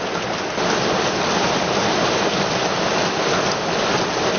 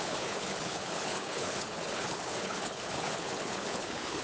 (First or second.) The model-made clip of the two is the second